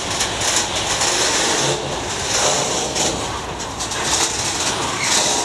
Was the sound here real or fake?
real